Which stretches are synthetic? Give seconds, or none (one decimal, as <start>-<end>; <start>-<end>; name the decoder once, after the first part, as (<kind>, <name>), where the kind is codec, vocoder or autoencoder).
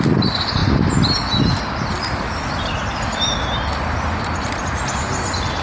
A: 0.6-3.0 (vocoder, BigVGAN v2)